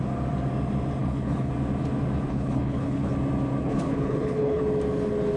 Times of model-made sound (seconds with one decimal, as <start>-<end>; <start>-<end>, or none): 1.0-1.5; 2.3-3.1; 3.6-4.6

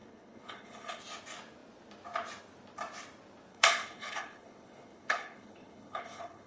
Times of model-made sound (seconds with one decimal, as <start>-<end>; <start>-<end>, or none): 0.0-1.0; 3.5-6.5

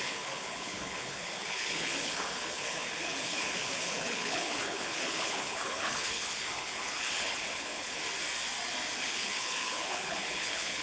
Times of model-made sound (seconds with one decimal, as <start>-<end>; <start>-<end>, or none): 0.0-8.0; 9.0-10.8

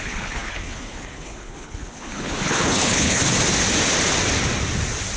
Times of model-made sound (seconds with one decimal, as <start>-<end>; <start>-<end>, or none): 0.0-3.2

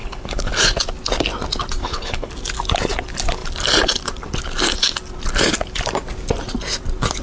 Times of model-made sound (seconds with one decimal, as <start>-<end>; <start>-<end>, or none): 0.0-0.5; 1.8-2.3